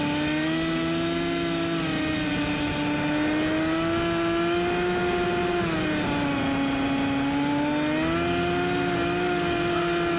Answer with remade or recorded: recorded